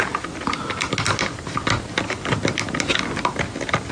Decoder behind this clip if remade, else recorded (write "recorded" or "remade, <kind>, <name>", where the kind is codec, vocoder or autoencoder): recorded